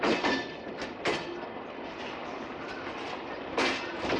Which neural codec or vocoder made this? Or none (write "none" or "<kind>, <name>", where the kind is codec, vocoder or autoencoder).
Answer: none